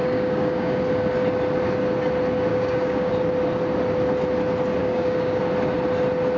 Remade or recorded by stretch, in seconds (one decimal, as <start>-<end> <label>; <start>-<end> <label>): 0.0-0.8 remade; 0.8-2.5 recorded; 2.5-3.1 remade; 3.1-4.8 recorded; 4.8-5.4 remade; 5.4-6.4 recorded